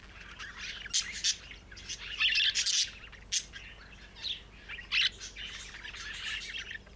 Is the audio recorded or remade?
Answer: recorded